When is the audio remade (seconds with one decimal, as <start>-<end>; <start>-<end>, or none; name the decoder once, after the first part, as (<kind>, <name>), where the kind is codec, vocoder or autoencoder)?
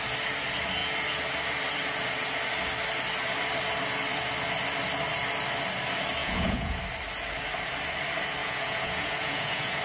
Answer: 6.2-6.8 (vocoder, Vocos); 8.4-9.8